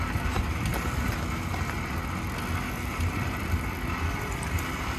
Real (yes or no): yes